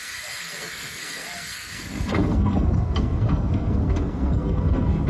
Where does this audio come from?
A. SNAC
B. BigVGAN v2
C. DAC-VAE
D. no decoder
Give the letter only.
A